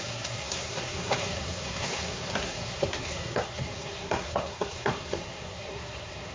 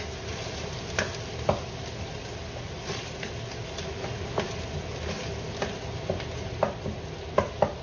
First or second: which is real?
second